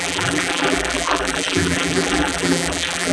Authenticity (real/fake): fake